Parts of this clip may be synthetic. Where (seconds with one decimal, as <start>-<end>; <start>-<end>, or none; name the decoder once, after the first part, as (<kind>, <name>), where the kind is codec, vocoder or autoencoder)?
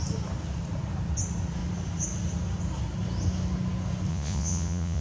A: 4.1-5.0 (vocoder, Vocos)